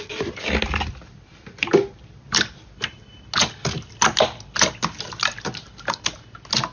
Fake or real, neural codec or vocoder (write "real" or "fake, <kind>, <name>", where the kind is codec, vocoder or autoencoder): real